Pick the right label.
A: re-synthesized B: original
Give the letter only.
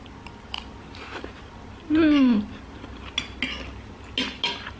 B